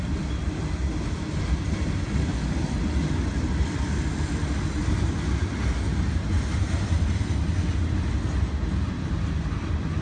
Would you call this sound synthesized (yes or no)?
no